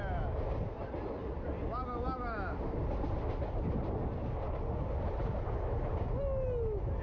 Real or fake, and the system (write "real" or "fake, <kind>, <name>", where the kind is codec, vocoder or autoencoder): real